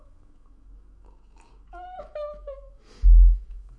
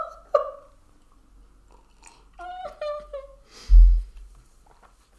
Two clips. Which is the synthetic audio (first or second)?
first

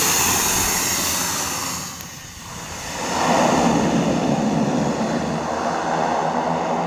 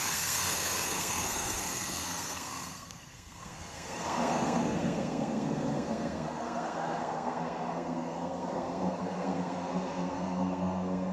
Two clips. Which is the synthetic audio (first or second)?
second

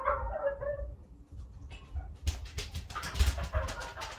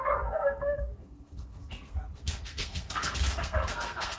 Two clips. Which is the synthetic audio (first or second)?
second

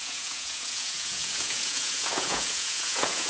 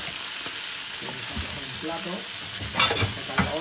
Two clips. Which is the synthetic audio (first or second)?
first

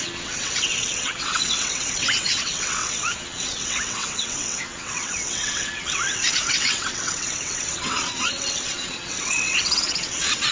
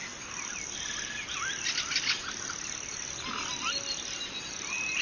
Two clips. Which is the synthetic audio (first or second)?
first